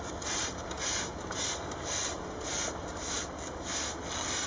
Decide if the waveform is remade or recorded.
recorded